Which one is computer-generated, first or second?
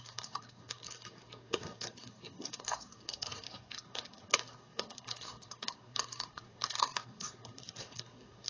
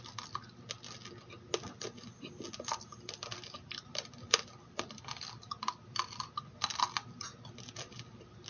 first